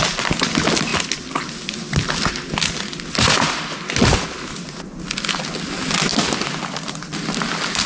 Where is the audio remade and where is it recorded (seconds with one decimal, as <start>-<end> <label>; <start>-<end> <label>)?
0.0-7.9 recorded